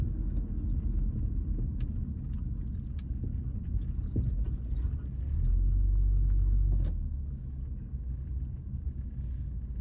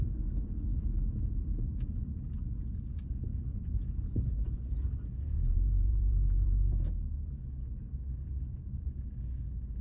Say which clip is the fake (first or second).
second